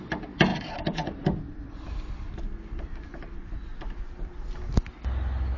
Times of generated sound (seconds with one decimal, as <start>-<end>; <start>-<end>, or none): 0.5-2.4; 3.7-4.4